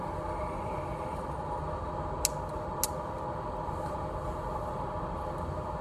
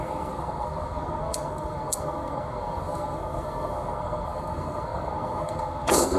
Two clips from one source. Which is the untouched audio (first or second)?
first